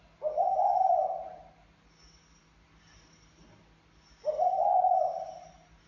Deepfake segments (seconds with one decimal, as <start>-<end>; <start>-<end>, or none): none